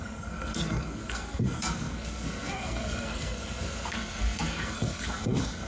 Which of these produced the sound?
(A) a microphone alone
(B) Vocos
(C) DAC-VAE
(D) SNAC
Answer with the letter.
D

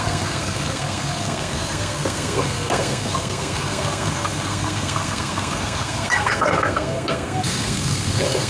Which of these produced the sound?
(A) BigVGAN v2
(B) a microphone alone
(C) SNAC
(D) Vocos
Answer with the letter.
C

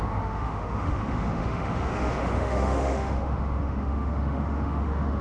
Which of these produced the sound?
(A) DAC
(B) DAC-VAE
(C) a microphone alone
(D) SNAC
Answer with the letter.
B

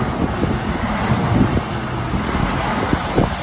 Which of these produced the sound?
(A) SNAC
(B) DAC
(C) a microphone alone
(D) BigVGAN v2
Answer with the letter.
C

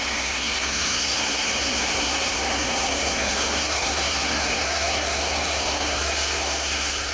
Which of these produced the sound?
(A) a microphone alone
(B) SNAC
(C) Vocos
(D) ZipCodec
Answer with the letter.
B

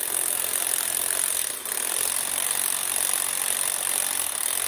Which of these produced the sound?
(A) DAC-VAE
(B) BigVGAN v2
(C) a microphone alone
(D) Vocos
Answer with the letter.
C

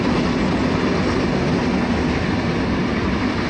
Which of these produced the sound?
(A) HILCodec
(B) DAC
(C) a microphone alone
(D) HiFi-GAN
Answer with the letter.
C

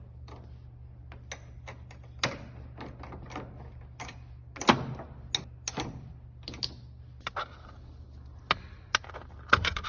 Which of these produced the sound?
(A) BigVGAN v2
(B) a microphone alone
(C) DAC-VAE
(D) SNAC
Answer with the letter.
B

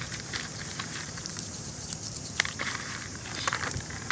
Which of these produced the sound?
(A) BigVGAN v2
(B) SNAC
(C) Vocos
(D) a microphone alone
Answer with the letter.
A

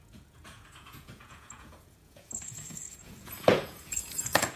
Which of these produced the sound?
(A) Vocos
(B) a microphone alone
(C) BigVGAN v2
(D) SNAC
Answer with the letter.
A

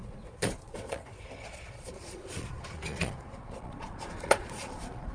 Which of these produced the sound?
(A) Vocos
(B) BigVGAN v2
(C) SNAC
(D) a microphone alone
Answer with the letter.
A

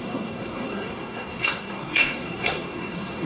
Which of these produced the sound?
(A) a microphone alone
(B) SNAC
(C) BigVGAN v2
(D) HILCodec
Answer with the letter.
B